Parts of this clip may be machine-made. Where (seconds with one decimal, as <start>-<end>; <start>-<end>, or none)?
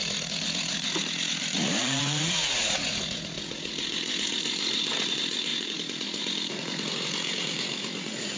0.0-8.4